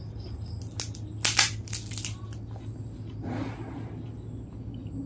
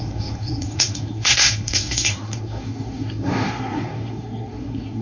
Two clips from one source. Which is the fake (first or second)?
second